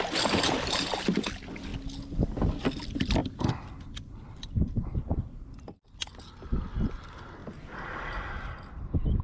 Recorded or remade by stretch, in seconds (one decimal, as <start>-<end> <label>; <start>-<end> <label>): 0.0-9.2 recorded

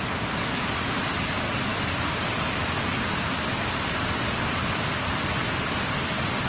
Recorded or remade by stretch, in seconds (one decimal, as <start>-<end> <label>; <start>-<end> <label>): 0.0-6.5 recorded

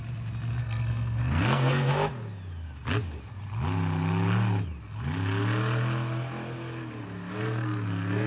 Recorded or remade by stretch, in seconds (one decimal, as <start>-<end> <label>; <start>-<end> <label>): 0.0-0.6 recorded; 0.6-1.9 remade; 1.9-7.4 recorded; 7.4-8.3 remade